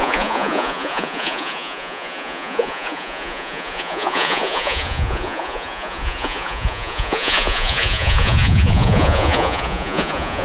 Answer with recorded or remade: remade